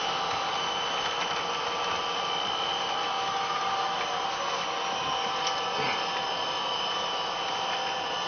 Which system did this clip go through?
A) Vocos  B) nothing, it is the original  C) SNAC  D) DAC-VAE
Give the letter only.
B